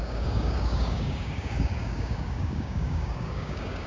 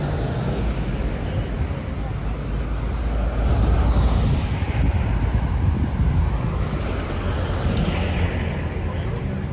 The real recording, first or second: second